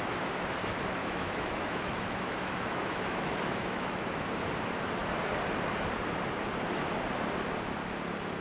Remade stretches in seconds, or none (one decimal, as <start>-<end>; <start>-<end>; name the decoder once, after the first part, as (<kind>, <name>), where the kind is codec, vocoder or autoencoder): 1.0-4.3 (autoencoder, DAC-VAE)